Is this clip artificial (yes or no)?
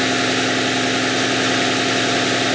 no